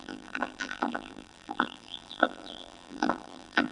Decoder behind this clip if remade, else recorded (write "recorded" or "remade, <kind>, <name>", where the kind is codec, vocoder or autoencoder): remade, vocoder, BigVGAN v2